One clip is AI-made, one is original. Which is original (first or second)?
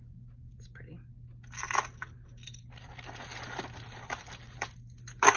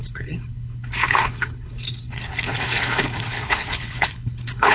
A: first